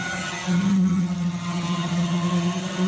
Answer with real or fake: fake